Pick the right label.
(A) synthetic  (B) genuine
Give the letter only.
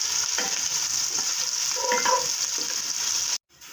B